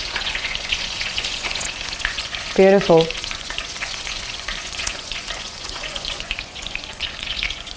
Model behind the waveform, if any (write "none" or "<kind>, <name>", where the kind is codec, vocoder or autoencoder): vocoder, Vocos